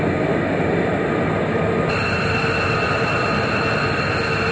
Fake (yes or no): no